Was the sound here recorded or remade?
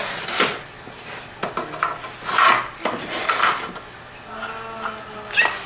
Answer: recorded